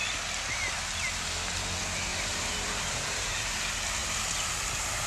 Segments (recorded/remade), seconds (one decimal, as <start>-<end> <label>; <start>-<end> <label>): 0.0-2.1 recorded; 2.1-3.6 remade; 3.6-4.0 recorded; 4.0-4.5 remade; 4.5-5.1 recorded